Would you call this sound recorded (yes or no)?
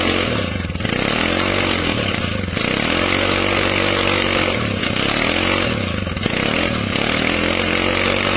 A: yes